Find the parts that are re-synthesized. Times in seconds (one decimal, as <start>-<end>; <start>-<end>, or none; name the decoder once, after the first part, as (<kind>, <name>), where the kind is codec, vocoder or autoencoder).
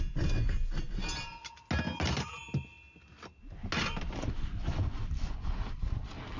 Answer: none